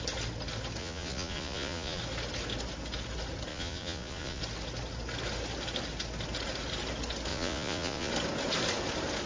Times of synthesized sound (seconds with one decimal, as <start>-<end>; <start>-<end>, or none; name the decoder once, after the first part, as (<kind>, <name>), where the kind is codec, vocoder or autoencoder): 0.8-2.0 (vocoder, Vocos); 3.5-4.4; 7.3-8.1